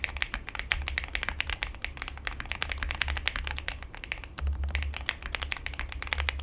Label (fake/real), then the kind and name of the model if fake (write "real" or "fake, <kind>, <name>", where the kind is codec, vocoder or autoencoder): real